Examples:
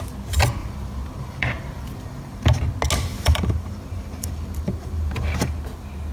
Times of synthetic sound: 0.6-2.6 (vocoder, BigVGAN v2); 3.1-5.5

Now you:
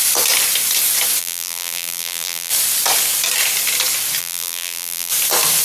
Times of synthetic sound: 1.2-2.5 (vocoder, BigVGAN v2); 4.2-5.1